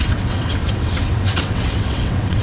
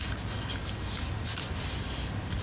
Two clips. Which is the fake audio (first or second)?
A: first